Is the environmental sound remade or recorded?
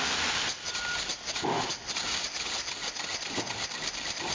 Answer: recorded